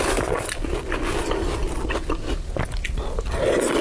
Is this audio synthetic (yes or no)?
no